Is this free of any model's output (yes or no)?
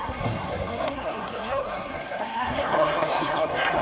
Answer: no